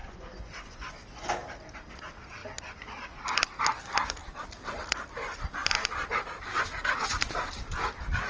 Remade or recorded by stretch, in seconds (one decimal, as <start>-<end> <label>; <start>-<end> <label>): 0.0-0.9 remade; 0.9-8.3 recorded